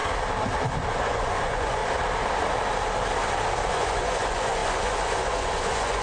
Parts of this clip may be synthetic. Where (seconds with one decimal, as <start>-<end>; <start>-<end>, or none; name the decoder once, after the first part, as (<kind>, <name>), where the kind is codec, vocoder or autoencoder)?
0.9-1.8 (vocoder, Vocos); 3.7-6.0